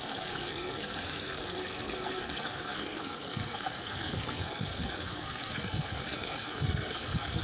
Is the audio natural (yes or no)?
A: no